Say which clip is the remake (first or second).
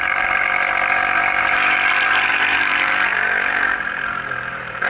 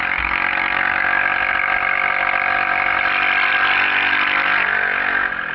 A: first